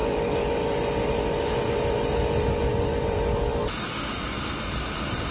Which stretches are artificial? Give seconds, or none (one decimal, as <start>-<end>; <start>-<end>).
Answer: none